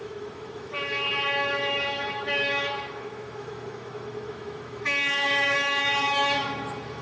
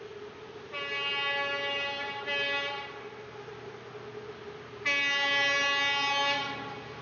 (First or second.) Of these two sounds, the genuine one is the second